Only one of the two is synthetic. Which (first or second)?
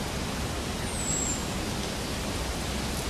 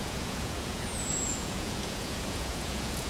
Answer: second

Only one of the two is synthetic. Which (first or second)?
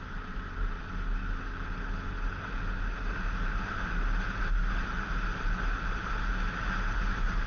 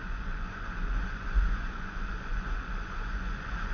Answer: second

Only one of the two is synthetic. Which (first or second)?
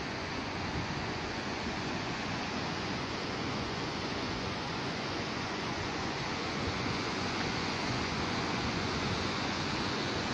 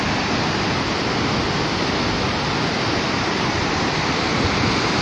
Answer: first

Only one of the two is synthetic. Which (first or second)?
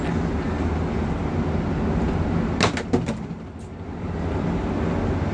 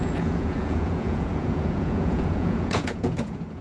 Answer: second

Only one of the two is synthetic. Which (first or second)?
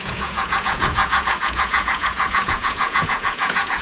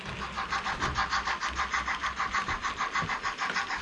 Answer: first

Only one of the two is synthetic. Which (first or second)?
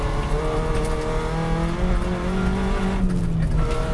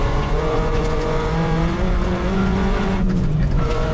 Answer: second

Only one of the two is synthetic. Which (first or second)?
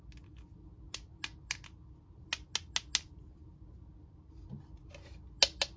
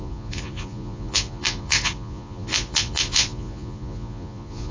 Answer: second